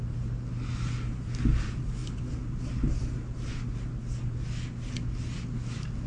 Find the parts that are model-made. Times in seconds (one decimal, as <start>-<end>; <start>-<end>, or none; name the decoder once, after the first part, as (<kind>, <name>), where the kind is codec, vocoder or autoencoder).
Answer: none